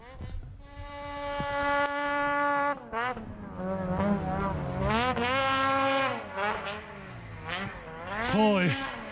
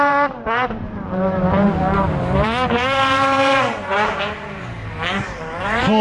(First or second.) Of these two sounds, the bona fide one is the first